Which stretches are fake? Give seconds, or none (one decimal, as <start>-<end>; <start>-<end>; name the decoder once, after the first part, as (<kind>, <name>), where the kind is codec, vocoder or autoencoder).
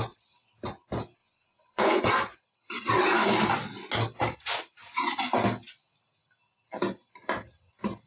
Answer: 1.2-2.1 (vocoder, Vocos)